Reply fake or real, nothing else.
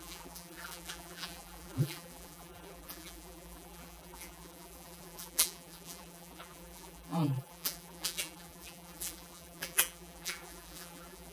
fake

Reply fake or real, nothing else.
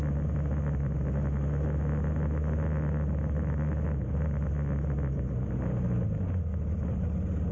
real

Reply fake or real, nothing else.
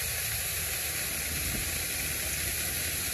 real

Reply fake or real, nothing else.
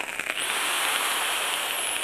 real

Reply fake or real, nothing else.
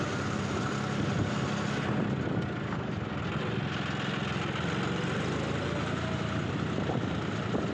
real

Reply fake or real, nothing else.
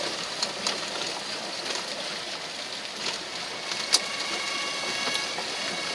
real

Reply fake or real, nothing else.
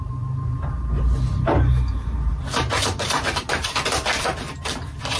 fake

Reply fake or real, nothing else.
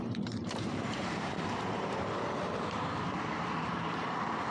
fake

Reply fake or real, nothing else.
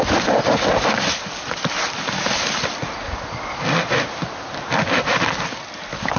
real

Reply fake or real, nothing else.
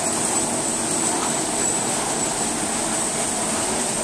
real